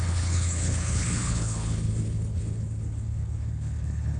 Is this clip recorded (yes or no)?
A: no